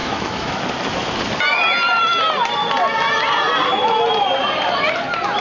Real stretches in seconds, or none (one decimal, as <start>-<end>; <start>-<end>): 0.6-5.4